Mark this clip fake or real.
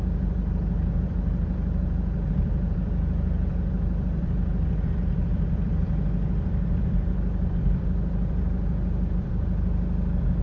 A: fake